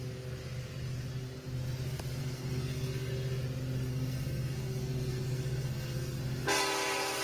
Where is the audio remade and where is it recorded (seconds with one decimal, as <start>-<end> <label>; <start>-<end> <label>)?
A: 0.0-2.2 recorded; 2.2-3.1 remade; 3.1-3.9 recorded; 3.9-6.2 remade; 6.2-7.2 recorded